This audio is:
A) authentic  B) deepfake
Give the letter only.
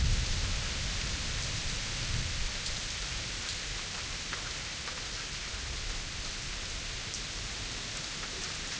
B